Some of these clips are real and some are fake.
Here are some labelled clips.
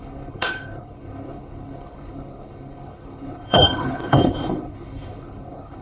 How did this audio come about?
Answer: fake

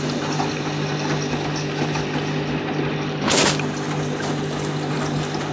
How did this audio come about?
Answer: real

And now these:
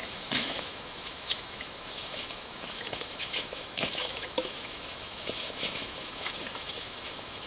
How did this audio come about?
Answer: fake